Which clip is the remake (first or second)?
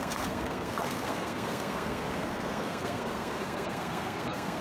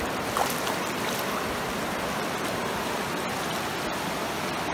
first